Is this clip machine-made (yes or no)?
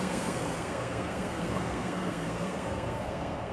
yes